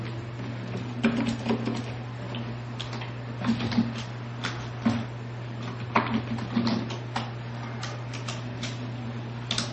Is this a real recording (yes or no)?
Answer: yes